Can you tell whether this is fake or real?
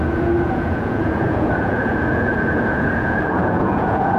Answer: fake